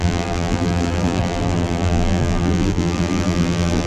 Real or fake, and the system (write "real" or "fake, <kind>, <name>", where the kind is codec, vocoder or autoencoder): fake, vocoder, BigVGAN v2